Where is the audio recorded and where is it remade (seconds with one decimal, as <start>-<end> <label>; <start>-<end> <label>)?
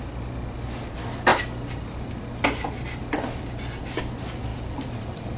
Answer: 0.0-1.3 recorded; 1.3-4.0 remade; 4.0-4.5 recorded; 4.5-5.4 remade